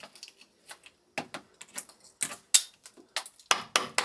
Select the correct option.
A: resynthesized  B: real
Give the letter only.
B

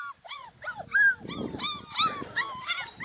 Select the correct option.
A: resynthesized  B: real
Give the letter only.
B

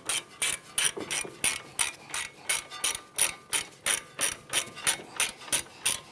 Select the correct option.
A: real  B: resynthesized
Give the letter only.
A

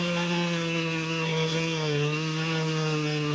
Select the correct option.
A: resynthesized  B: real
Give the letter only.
A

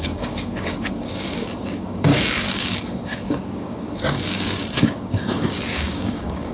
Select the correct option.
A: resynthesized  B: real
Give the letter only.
A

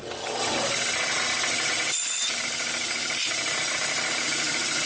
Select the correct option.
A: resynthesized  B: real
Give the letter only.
B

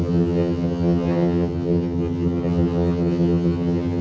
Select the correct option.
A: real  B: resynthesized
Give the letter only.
B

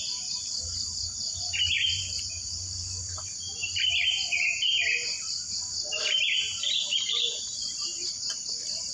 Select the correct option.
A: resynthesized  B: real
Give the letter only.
A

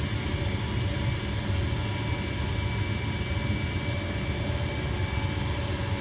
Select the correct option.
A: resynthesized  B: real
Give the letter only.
B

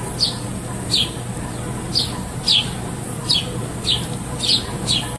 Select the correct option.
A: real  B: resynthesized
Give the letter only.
A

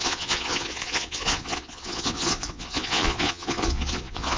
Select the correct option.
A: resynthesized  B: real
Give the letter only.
A